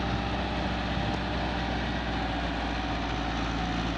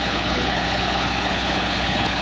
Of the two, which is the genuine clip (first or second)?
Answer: first